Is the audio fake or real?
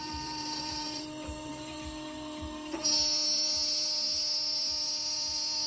fake